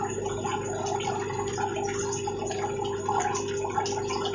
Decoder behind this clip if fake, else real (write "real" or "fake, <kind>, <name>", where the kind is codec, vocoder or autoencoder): real